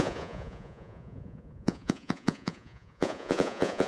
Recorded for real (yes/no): no